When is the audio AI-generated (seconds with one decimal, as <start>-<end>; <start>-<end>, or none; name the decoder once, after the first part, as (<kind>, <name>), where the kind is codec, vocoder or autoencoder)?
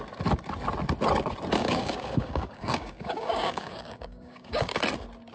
1.6-4.8 (codec, DAC)